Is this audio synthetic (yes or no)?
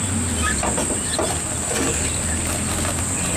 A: no